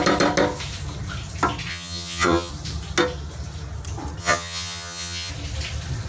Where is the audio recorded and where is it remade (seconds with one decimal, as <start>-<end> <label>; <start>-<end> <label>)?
0.0-1.7 recorded; 1.7-2.5 remade; 2.5-4.2 recorded; 4.2-5.3 remade; 5.3-6.1 recorded

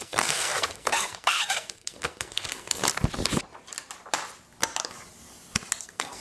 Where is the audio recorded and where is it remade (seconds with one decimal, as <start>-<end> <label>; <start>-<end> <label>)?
0.0-2.8 remade; 2.8-5.8 recorded; 5.8-6.2 remade

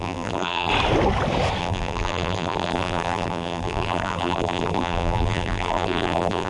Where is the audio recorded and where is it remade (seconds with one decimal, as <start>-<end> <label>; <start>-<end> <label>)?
0.0-0.7 remade; 0.7-1.6 recorded; 1.6-6.5 remade